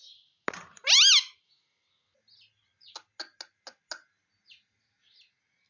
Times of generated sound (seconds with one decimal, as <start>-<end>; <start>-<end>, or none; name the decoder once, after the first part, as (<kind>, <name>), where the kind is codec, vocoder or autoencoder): none

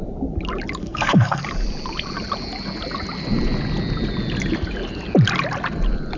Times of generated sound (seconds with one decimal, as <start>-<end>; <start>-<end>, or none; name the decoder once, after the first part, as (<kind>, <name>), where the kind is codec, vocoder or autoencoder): 0.8-1.4 (codec, SNAC)

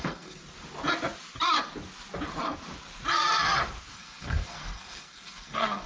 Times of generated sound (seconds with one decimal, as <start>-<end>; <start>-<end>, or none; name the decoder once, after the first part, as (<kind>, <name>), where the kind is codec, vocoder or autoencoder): 0.0-0.4 (codec, SNAC); 3.9-5.9

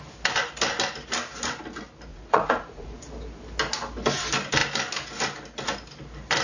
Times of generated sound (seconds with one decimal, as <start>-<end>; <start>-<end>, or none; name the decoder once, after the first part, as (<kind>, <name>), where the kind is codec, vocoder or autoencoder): 2.1-3.0 (vocoder, Vocos)